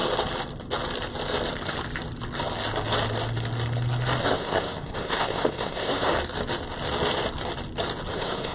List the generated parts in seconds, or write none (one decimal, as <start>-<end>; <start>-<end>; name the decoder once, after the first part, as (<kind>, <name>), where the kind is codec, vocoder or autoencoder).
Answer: 4.2-6.1 (codec, SNAC); 8.1-8.5